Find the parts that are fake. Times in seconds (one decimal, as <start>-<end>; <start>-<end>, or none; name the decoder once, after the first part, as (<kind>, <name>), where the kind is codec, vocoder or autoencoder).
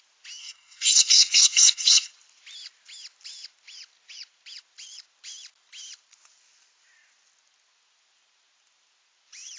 0.4-2.1 (codec, SNAC)